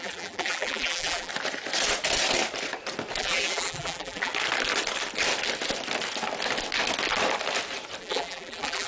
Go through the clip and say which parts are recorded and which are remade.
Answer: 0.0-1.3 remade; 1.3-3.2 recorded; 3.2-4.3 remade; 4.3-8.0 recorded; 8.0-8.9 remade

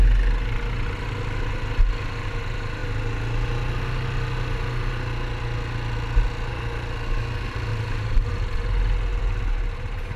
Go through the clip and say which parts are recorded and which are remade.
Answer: 0.0-7.7 recorded; 7.7-8.3 remade; 8.3-9.1 recorded; 9.1-10.2 remade

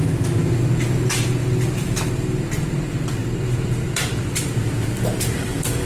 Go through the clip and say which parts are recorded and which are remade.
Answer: 0.0-3.2 recorded; 3.2-5.5 remade; 5.5-5.9 recorded

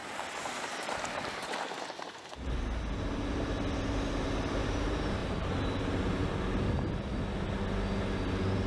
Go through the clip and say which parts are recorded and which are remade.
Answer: 0.0-1.9 remade; 1.9-5.2 recorded; 5.2-6.3 remade; 6.3-8.7 recorded

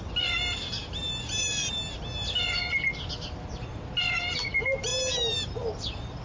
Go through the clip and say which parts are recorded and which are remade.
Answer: 0.0-6.2 recorded

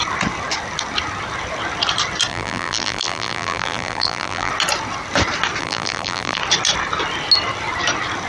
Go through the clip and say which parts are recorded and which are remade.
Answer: 0.0-2.3 recorded; 2.3-4.5 remade; 4.5-5.6 recorded; 5.6-6.4 remade; 6.4-8.3 recorded